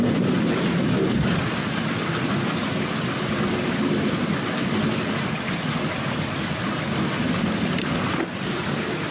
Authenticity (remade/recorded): remade